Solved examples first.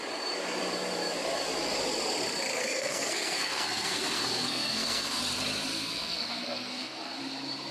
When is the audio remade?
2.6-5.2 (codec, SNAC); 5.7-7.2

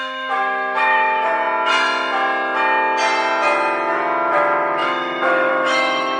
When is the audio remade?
0.0-1.3 (autoencoder, DAC-VAE); 4.3-6.2

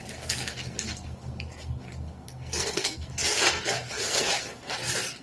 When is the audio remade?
0.0-5.2 (codec, SNAC)

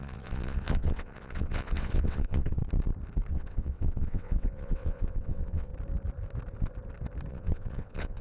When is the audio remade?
0.0-2.6 (vocoder, WaveNeXt); 3.3-5.7; 7.3-8.2

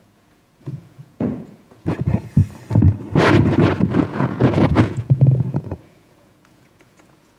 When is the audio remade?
0.0-2.4 (vocoder, Vocos); 4.0-7.4